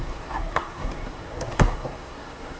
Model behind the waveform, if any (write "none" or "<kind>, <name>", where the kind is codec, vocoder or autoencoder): codec, SNAC